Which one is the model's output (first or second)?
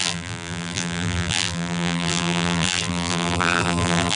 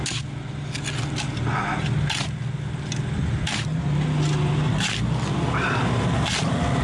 first